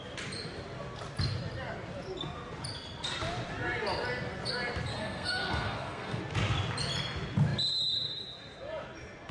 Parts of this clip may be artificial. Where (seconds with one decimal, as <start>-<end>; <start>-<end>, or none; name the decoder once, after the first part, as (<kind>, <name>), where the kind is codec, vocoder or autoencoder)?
4.9-6.2 (codec, SNAC)